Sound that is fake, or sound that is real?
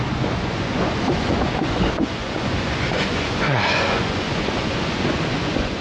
fake